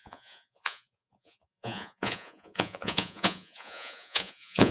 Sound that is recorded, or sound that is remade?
remade